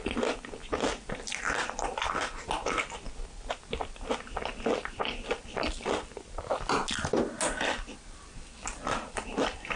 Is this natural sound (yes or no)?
yes